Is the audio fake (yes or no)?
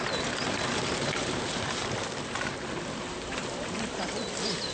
no